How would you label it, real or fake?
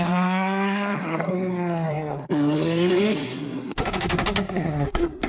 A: fake